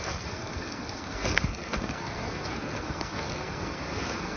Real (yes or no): no